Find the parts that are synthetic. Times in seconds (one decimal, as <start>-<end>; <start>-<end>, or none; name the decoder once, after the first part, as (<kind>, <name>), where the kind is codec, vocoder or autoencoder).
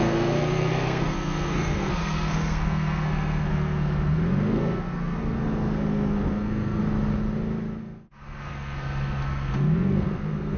0.0-6.8 (codec, SNAC); 7.8-10.6